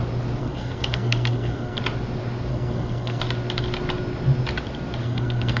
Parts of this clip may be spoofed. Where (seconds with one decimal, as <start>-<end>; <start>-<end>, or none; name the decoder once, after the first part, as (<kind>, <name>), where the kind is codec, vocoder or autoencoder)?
0.4-1.8 (codec, SNAC); 2.5-3.2; 5.0-5.6

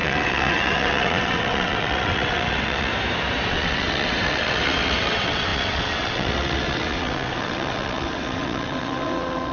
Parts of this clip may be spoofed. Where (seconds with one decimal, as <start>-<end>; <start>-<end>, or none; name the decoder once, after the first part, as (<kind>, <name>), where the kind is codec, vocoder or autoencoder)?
0.0-2.9 (vocoder, WaveNeXt); 3.5-9.5